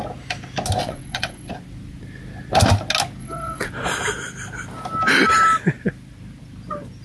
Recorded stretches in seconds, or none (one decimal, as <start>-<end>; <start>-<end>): 0.0-0.8; 1.5-3.2; 3.7-7.0